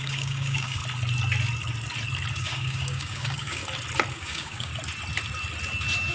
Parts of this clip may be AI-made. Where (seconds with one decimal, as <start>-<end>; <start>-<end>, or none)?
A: 0.0-0.8; 2.3-3.6; 4.1-4.7